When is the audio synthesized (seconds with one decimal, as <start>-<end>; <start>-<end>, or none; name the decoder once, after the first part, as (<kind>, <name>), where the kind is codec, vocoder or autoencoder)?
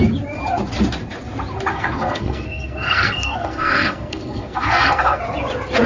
1.7-5.2 (codec, SNAC)